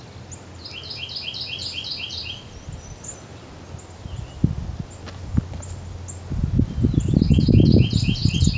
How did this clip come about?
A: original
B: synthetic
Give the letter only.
A